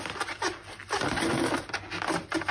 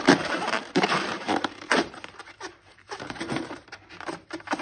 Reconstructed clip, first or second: second